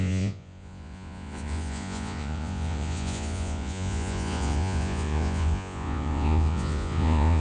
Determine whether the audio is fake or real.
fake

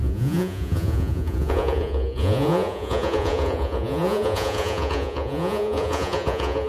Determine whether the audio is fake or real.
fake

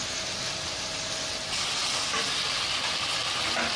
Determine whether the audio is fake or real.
real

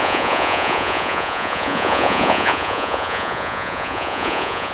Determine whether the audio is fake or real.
fake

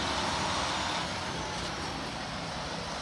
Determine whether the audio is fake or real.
real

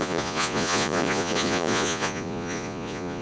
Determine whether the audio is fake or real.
fake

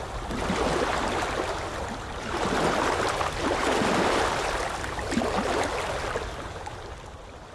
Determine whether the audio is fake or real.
real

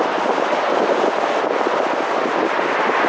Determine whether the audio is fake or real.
real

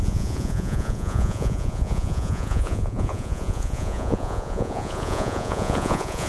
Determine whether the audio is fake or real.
fake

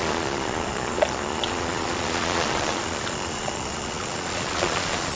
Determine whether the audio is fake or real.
fake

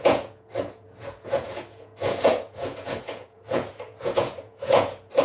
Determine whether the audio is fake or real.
fake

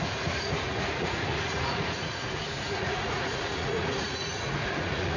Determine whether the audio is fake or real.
fake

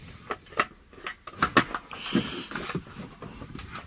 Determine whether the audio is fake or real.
real